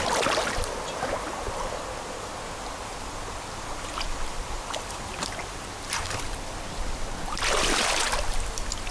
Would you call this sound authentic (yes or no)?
yes